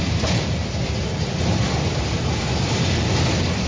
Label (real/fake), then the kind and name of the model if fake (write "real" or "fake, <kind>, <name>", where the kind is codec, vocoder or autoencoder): real